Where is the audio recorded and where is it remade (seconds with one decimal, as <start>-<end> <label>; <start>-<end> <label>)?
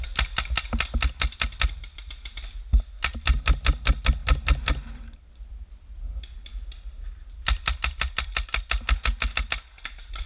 0.0-10.3 recorded